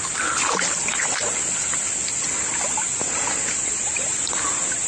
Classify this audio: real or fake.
real